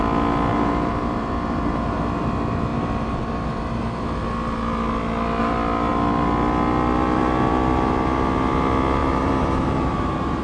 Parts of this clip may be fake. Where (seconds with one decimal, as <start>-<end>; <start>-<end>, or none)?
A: 0.5-2.0; 9.0-10.4